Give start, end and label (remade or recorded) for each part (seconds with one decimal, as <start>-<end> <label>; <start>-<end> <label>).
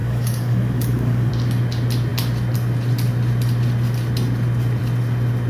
0.0-1.3 remade; 1.3-5.5 recorded